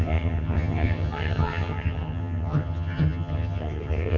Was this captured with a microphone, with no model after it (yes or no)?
no